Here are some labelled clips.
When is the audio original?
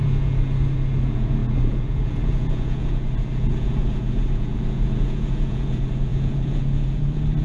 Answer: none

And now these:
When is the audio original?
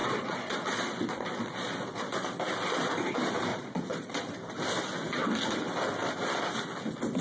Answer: 2.3-3.5; 4.3-7.2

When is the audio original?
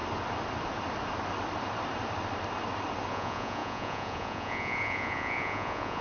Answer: 0.0-3.1